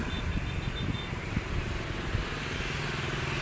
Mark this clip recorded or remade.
recorded